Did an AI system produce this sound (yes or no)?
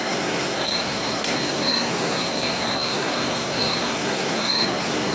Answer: yes